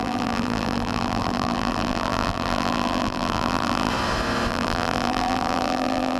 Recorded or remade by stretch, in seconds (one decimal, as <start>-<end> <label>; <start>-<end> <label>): 0.0-3.9 remade; 3.9-4.5 recorded; 4.5-6.2 remade